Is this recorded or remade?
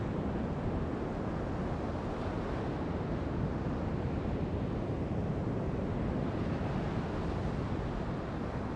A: recorded